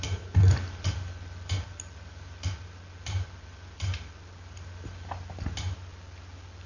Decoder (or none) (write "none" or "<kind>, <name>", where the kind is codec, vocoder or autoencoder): none